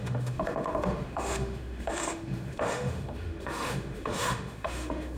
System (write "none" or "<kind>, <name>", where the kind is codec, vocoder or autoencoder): autoencoder, DAC-VAE